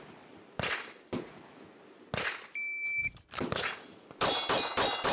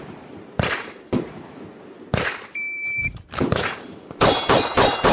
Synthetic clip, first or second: second